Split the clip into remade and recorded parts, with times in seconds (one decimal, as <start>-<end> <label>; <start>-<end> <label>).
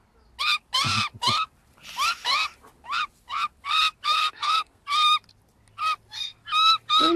0.0-4.2 recorded; 4.2-4.8 remade; 4.8-7.2 recorded